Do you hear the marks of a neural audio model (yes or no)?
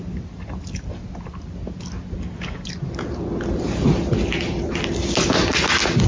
no